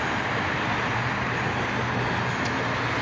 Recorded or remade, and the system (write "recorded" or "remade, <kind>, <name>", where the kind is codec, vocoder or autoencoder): recorded